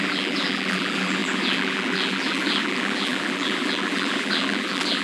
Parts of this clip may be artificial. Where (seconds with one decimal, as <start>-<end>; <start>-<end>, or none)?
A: 0.0-5.0